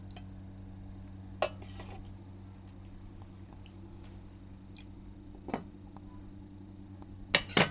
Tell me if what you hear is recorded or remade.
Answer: recorded